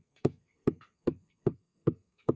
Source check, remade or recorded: remade